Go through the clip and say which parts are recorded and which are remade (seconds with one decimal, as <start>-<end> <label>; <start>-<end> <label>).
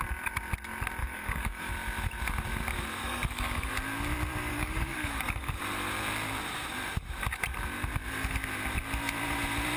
0.0-1.0 recorded; 1.0-1.7 remade; 1.7-3.0 recorded; 3.0-3.7 remade; 3.7-4.5 recorded; 4.5-5.6 remade; 5.6-9.8 recorded